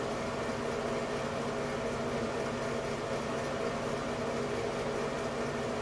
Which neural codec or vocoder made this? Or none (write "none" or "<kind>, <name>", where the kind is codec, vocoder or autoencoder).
none